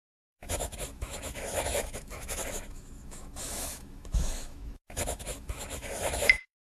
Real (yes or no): no